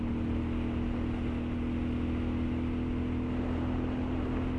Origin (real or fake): real